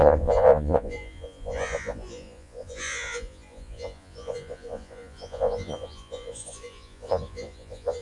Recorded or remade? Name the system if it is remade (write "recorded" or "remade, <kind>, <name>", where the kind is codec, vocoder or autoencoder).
remade, vocoder, Vocos